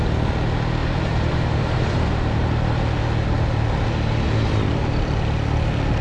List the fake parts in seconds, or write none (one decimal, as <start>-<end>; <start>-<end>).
0.8-3.0